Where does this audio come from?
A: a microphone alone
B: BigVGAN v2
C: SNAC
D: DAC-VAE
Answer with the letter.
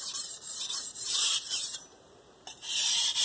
B